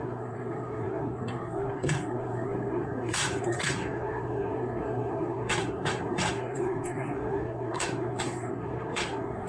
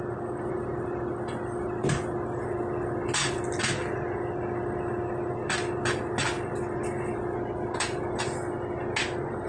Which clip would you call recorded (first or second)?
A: second